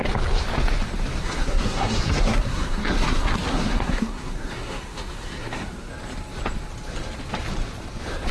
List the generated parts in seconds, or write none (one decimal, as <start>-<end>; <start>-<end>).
1.2-5.9